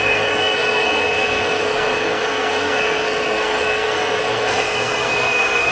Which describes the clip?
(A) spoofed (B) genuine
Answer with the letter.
A